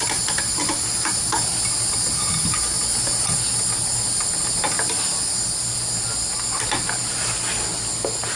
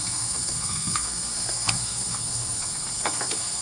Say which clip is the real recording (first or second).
first